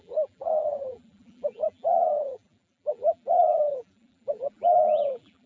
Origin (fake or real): fake